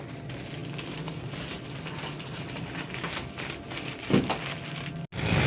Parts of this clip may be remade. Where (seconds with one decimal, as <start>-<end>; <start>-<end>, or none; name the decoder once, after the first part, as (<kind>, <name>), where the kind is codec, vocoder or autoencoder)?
none